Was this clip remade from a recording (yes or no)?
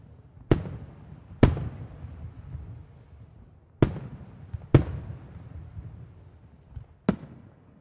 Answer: no